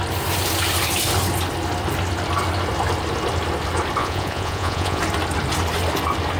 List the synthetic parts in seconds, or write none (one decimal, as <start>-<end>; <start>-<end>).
4.0-5.0